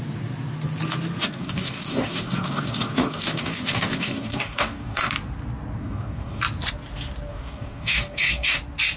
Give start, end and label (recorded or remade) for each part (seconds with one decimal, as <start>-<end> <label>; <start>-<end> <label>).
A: 0.0-1.2 recorded; 1.2-5.1 remade; 5.1-5.8 recorded; 5.8-6.4 remade; 6.4-7.3 recorded; 7.3-8.6 remade; 8.6-9.0 recorded

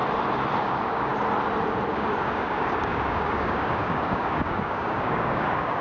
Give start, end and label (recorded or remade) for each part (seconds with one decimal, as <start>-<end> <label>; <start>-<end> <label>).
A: 0.0-0.6 recorded; 0.6-1.1 remade; 1.1-1.9 recorded; 1.9-5.8 remade

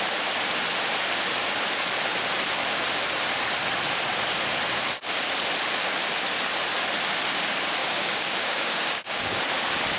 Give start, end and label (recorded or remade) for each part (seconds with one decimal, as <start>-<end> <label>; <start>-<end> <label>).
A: 0.0-7.8 recorded; 7.8-9.4 remade; 9.4-10.0 recorded

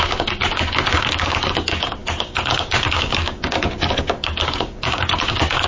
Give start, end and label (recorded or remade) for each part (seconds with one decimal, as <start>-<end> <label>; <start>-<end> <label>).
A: 0.0-5.7 remade

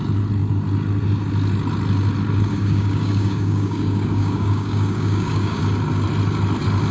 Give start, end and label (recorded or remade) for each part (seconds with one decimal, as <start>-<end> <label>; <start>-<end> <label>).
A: 0.0-2.5 recorded; 2.5-5.6 remade; 5.6-6.9 recorded

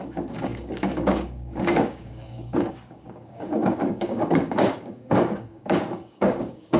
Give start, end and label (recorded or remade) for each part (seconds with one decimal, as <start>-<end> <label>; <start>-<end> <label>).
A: 0.0-6.8 remade